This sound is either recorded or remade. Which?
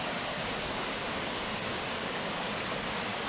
remade